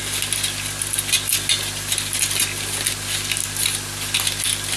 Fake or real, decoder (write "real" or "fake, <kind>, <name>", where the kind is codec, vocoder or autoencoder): real